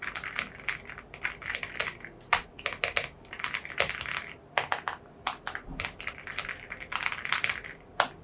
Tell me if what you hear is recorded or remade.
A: recorded